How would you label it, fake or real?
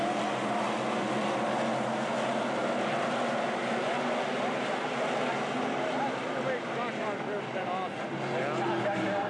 real